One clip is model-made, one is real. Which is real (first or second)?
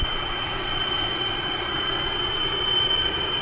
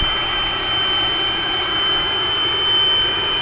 second